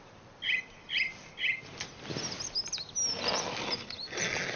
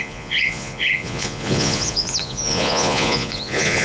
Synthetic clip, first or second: second